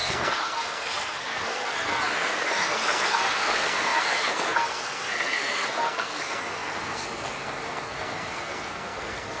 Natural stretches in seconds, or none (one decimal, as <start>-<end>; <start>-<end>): none